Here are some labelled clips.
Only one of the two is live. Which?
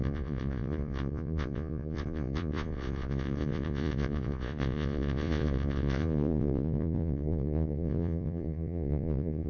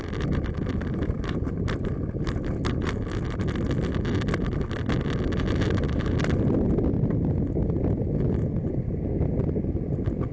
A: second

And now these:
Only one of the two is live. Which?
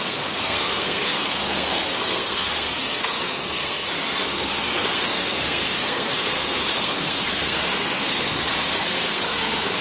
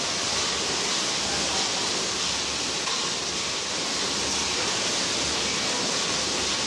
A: second